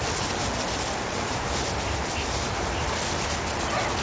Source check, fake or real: real